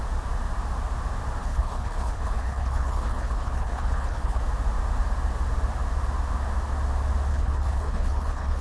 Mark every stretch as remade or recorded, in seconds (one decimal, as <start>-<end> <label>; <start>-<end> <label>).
0.0-1.4 recorded; 1.4-4.4 remade; 4.4-7.3 recorded; 7.3-8.6 remade